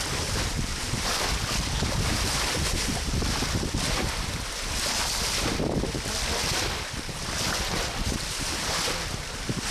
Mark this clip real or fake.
real